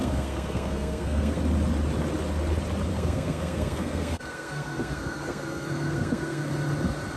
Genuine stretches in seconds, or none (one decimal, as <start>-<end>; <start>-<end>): 1.4-2.9; 6.5-7.2